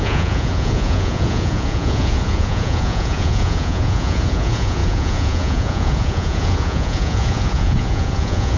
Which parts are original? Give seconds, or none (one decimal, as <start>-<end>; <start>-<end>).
none